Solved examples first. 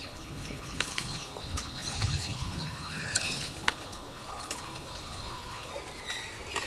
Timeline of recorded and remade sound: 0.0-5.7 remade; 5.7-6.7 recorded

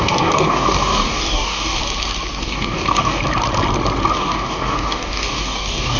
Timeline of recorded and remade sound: 0.0-1.8 remade; 1.8-2.4 recorded; 2.4-3.2 remade; 3.2-4.1 recorded; 4.1-6.0 remade

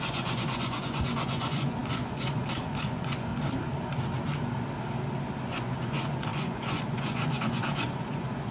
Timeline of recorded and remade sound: 0.0-3.3 remade; 3.3-5.5 recorded; 5.5-8.5 remade